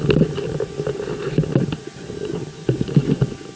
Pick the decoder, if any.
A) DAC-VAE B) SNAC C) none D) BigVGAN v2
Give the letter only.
C